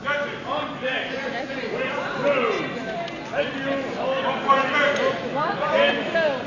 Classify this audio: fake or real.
real